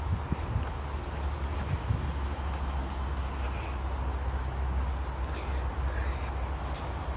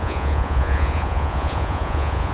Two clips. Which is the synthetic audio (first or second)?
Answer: second